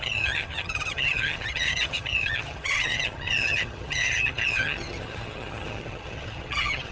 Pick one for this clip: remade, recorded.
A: remade